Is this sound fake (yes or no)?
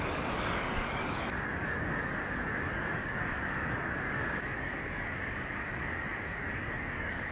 yes